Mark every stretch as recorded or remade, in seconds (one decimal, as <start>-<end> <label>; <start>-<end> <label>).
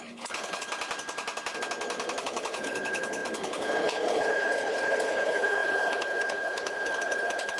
0.0-0.7 remade; 0.7-2.2 recorded; 2.2-7.6 remade